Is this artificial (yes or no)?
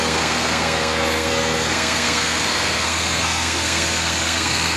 yes